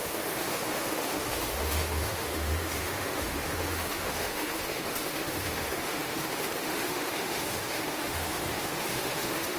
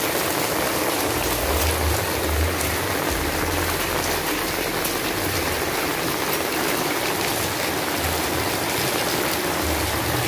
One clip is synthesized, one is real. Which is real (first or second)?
second